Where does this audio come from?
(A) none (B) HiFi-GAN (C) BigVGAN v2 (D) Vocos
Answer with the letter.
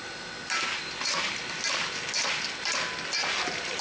A